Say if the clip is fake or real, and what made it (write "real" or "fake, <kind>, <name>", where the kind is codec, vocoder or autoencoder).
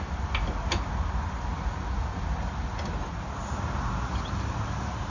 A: real